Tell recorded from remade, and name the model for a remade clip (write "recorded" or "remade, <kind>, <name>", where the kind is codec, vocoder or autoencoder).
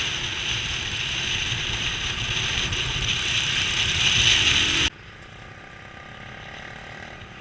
recorded